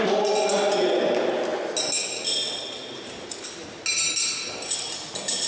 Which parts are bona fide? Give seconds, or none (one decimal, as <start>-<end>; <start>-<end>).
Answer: 0.0-5.5

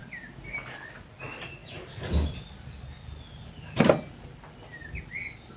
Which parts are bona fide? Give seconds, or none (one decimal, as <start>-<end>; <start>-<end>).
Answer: 0.0-5.6